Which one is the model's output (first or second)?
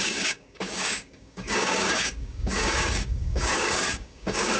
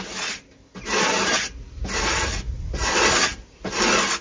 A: first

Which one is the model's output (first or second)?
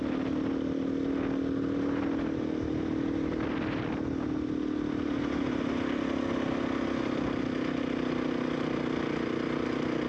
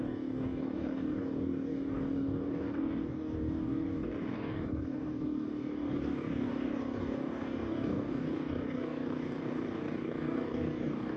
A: second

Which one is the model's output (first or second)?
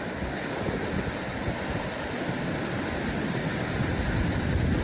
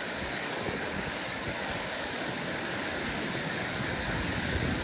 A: second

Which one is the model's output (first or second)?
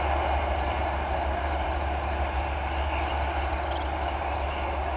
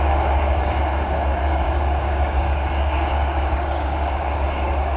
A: second